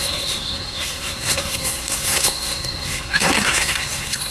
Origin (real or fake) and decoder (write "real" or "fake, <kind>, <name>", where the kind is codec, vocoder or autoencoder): fake, codec, SNAC